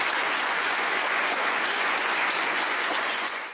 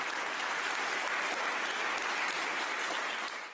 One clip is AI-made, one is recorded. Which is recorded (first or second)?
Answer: second